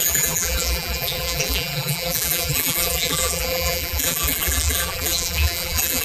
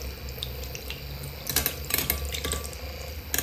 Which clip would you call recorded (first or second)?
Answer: second